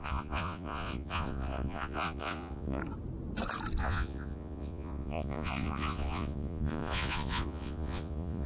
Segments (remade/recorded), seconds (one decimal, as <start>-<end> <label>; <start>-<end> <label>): 0.0-2.8 remade; 2.8-3.8 recorded; 3.8-8.5 remade